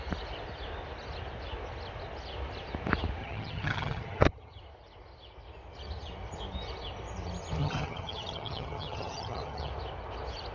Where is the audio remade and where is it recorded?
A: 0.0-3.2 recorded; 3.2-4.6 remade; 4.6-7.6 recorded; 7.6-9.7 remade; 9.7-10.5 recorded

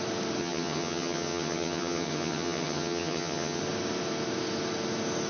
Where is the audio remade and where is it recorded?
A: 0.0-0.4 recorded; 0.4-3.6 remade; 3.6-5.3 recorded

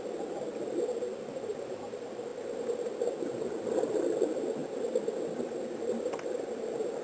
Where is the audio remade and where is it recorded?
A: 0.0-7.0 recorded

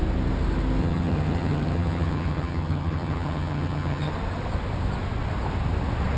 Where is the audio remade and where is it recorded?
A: 0.0-0.8 recorded; 0.8-4.1 remade; 4.1-6.2 recorded

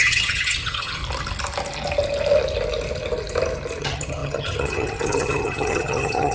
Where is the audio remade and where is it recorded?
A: 0.0-1.0 remade; 1.0-3.8 recorded; 3.8-6.3 remade

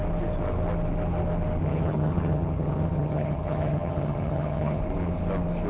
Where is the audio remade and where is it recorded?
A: 0.0-1.6 recorded; 1.6-4.8 remade; 4.8-5.7 recorded